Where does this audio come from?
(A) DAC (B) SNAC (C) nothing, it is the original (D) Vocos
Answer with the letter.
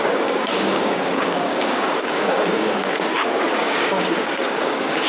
A